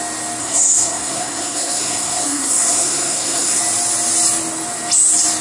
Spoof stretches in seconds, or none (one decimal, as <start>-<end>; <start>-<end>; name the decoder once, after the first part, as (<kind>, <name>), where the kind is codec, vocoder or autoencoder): 0.4-3.6 (codec, SNAC)